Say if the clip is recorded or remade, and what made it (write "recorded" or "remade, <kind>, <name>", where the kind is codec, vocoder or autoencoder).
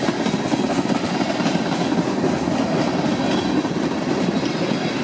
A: recorded